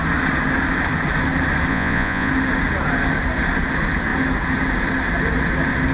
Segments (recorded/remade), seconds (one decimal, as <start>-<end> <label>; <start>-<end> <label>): 0.0-1.7 recorded; 1.7-2.3 remade; 2.3-5.9 recorded